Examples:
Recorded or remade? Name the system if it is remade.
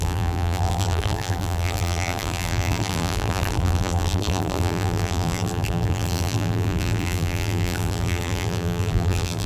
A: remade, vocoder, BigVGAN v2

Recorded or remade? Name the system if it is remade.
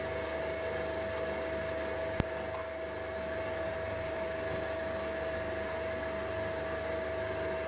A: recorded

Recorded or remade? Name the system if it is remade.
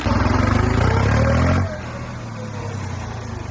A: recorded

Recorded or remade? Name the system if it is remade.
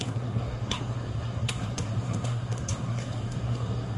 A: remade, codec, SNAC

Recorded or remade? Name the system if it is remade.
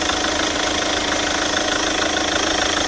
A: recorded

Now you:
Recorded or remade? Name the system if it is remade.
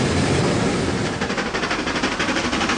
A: remade, vocoder, BigVGAN v2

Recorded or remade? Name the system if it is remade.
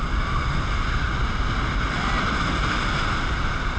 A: recorded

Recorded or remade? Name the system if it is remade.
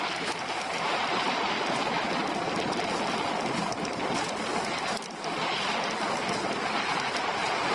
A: remade, vocoder, BigVGAN v2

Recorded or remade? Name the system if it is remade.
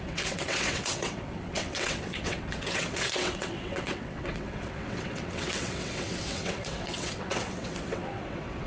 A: remade, vocoder, WaveNeXt